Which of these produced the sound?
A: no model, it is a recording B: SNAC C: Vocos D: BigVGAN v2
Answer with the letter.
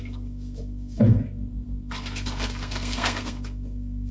B